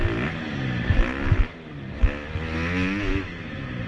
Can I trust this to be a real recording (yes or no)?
yes